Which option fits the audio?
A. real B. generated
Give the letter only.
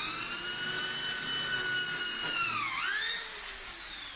A